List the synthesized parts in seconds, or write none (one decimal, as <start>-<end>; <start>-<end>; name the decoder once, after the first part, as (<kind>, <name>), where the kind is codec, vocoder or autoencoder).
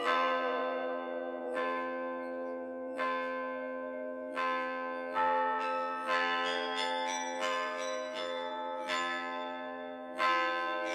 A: 0.0-10.9 (vocoder, BigVGAN v2)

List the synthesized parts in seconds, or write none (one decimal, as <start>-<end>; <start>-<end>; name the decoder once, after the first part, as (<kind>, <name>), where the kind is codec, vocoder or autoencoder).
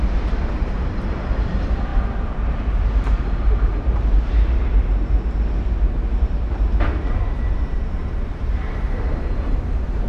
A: 0.0-10.1 (vocoder, BigVGAN v2)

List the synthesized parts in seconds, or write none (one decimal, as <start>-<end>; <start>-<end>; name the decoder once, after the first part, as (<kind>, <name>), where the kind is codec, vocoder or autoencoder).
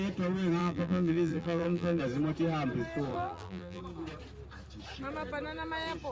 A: 0.6-2.0 (vocoder, BigVGAN v2); 3.1-3.8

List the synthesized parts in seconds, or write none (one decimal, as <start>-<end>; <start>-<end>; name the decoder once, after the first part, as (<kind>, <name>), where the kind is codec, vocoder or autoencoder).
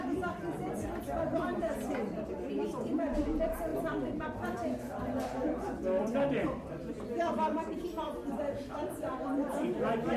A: 0.0-1.5 (vocoder, BigVGAN v2); 2.5-10.2